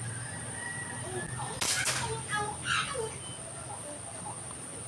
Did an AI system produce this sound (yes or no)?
no